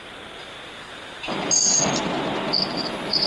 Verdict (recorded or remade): recorded